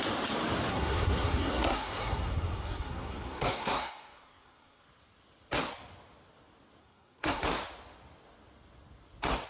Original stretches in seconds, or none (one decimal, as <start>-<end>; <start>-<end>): 0.0-0.7; 4.8-6.8; 7.4-9.5

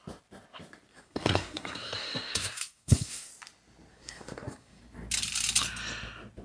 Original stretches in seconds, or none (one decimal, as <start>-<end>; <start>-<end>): 0.0-0.9; 3.3-3.9; 4.8-6.4

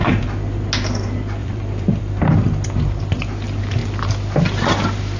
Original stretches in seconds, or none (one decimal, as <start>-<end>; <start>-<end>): 0.0-1.4; 2.4-5.2